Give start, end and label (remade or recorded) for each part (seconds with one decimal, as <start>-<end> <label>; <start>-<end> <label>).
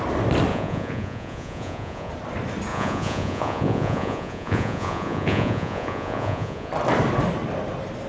0.0-0.5 recorded; 0.5-2.1 remade; 2.1-2.7 recorded; 2.7-6.7 remade; 6.7-8.1 recorded